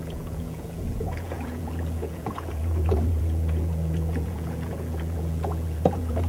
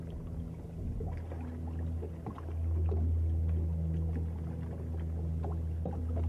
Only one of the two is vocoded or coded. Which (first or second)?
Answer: first